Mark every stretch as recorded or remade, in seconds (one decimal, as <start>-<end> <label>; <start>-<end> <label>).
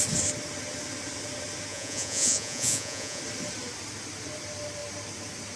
0.0-1.7 recorded; 1.7-3.2 remade; 3.2-5.6 recorded